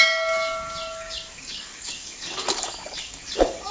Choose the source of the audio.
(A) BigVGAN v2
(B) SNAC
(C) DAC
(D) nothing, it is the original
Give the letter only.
C